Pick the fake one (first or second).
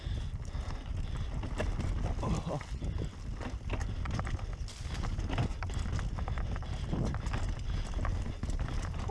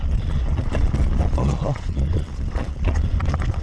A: second